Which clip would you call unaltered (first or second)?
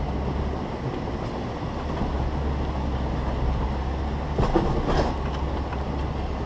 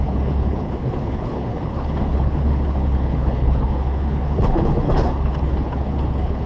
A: first